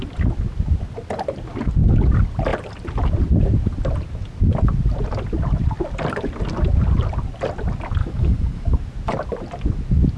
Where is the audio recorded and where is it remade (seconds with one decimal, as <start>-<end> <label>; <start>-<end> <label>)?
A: 0.0-8.0 recorded; 8.0-8.8 remade; 8.8-10.2 recorded